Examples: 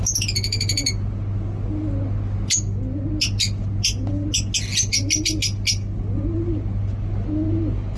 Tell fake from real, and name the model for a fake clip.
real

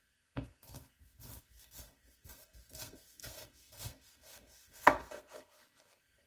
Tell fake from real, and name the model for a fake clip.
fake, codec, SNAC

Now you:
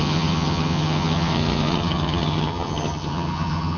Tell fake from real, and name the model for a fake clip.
fake, vocoder, HiFi-GAN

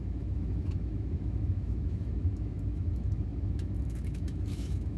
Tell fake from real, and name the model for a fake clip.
fake, autoencoder, DAC-VAE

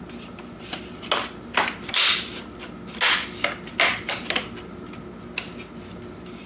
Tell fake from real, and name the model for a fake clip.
real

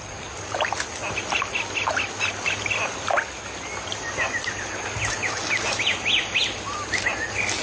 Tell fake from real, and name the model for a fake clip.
real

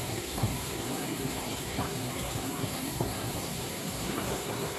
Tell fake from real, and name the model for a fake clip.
fake, codec, SNAC